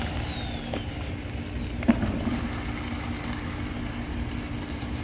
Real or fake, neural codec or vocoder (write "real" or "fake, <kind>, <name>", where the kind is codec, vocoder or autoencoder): real